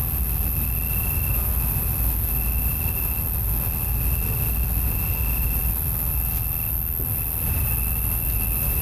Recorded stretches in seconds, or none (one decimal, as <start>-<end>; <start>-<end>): 0.0-8.8